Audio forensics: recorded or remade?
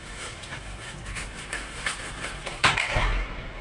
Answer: remade